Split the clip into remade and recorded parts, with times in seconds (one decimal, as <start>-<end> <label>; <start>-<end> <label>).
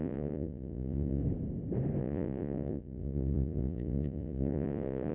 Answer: 0.0-1.2 remade; 1.2-2.0 recorded; 2.0-5.1 remade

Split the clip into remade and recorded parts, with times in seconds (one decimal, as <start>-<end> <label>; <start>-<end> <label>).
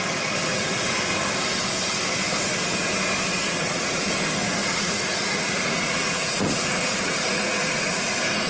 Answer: 0.0-3.3 recorded; 3.3-4.1 remade; 4.1-4.6 recorded; 4.6-8.5 remade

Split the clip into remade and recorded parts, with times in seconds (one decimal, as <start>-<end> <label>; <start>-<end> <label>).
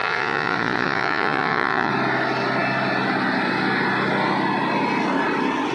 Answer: 0.0-1.9 remade; 1.9-5.7 recorded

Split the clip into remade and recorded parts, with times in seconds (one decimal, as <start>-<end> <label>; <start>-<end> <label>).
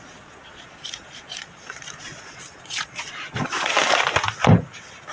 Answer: 0.0-3.7 remade; 3.7-5.1 recorded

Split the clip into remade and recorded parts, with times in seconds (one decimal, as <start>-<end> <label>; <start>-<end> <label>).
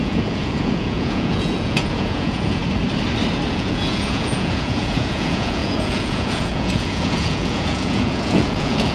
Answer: 0.0-2.6 remade; 2.6-3.5 recorded; 3.5-8.9 remade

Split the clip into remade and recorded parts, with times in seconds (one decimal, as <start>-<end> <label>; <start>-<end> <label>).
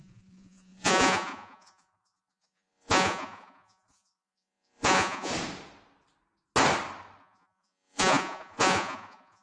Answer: 0.0-5.3 remade; 5.3-7.2 recorded; 7.2-9.4 remade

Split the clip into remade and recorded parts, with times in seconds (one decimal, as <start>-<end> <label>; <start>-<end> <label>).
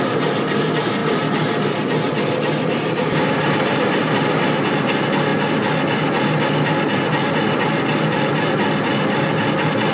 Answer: 0.0-9.9 recorded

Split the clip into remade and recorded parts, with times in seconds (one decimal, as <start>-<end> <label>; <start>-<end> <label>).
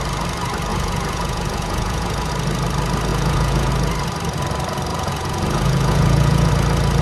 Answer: 0.0-0.7 recorded; 0.7-2.3 remade; 2.3-3.1 recorded; 3.1-3.7 remade; 3.7-4.9 recorded; 4.9-6.5 remade; 6.5-7.0 recorded